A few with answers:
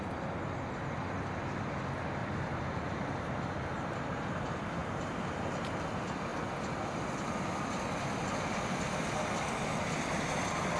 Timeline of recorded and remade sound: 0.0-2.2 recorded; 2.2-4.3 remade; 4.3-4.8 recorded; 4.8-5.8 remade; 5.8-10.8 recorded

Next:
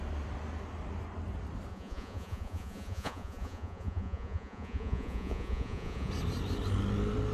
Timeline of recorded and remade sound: 0.0-1.7 recorded; 1.7-6.1 remade; 6.1-7.3 recorded

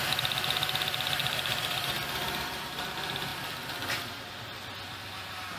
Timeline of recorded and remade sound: 0.0-1.2 recorded; 1.2-1.9 remade; 1.9-5.6 recorded